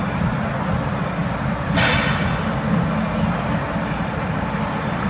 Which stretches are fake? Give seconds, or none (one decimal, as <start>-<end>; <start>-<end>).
none